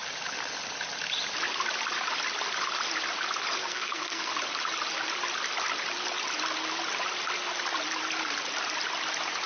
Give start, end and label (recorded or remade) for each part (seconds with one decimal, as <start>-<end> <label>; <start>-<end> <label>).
0.0-3.6 recorded; 3.6-4.3 remade; 4.3-9.5 recorded